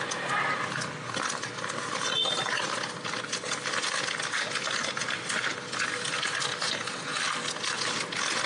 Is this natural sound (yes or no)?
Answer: yes